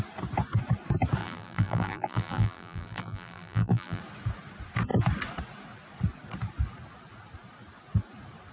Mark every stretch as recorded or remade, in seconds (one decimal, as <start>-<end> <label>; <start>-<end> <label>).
0.0-1.2 recorded; 1.2-4.0 remade; 4.0-8.5 recorded